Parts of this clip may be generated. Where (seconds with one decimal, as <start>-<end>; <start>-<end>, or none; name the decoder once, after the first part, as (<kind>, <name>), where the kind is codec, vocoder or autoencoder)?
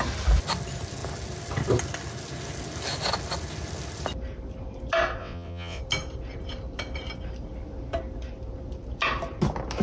5.2-5.8 (vocoder, WaveNeXt)